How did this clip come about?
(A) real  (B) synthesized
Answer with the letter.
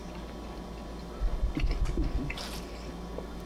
A